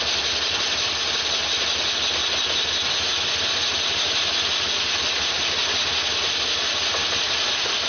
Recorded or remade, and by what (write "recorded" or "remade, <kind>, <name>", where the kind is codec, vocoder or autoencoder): recorded